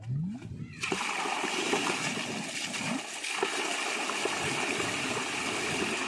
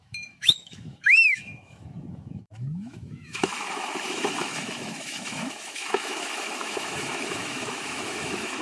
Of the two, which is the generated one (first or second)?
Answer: second